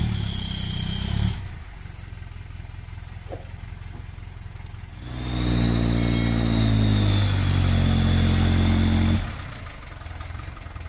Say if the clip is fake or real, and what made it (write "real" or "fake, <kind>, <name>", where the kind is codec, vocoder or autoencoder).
real